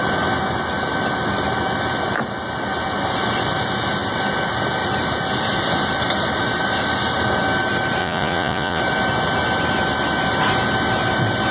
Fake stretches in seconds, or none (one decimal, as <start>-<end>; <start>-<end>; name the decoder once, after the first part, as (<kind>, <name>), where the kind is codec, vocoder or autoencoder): 8.0-8.8 (vocoder, Vocos)